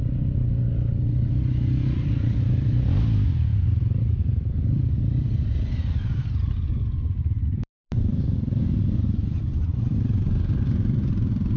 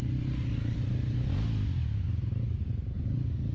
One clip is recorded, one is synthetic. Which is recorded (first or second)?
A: second